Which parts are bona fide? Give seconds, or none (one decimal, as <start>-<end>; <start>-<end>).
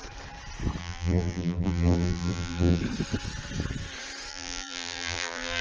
0.0-0.8; 2.8-4.3